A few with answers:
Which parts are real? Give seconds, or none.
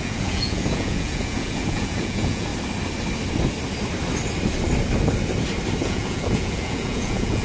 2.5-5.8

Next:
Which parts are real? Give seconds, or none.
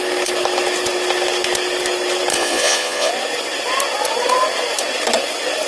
0.0-2.3; 3.1-5.7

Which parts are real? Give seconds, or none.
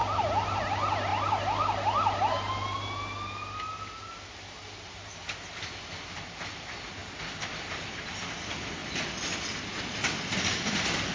0.0-11.1